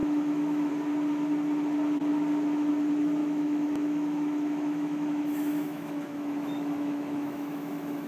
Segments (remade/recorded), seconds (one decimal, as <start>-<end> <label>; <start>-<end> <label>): 0.0-0.7 remade; 0.7-3.2 recorded; 3.2-8.1 remade